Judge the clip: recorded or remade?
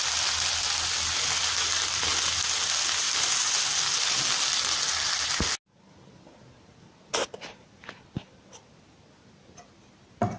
recorded